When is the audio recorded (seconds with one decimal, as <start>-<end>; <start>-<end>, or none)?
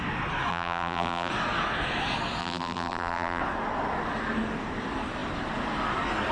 0.0-0.5; 1.3-2.4; 3.4-6.3